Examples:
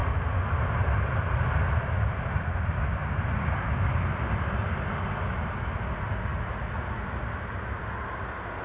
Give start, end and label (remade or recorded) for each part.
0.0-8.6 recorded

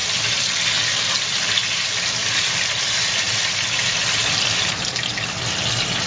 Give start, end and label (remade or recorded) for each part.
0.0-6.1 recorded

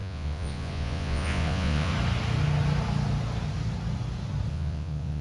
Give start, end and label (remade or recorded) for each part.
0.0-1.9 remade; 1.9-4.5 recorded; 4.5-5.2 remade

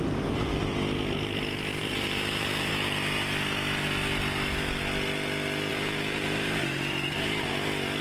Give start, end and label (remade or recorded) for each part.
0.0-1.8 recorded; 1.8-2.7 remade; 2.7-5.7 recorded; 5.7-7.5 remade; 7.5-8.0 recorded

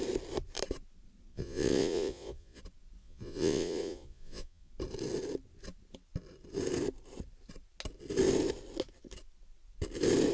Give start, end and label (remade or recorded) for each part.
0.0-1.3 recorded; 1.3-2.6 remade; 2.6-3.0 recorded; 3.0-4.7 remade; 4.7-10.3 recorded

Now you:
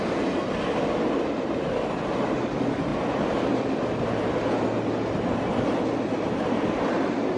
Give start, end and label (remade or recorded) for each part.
0.0-7.4 recorded